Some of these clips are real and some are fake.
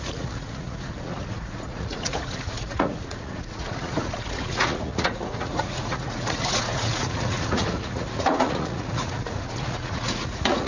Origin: fake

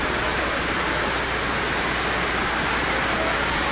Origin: real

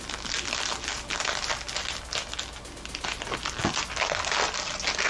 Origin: real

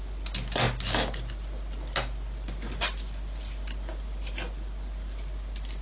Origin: real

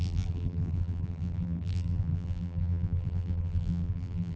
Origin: fake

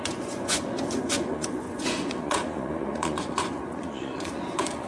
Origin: fake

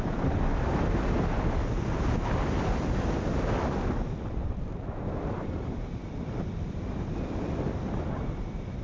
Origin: real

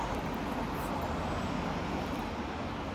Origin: real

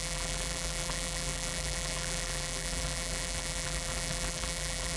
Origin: fake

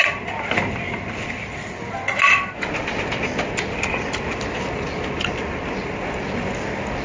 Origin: real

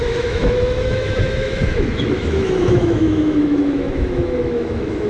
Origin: fake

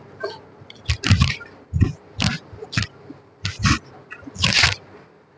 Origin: real